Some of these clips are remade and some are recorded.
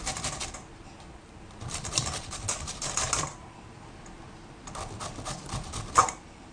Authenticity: recorded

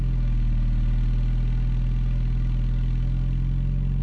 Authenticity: recorded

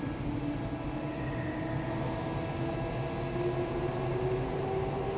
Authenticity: recorded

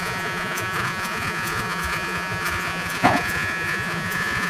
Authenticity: remade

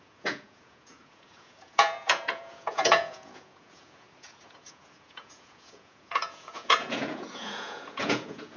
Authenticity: remade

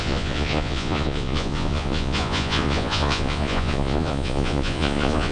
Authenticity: remade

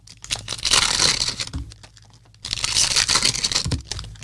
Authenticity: recorded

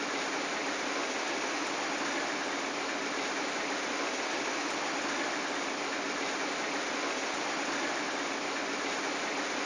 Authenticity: recorded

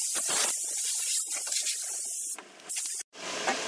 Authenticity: recorded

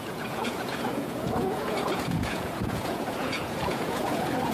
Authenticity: remade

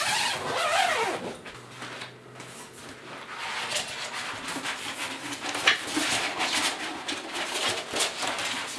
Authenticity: recorded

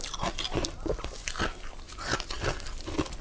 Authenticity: recorded